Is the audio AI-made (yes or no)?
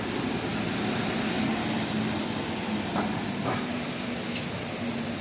no